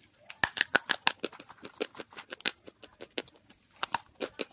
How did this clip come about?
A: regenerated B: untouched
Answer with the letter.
B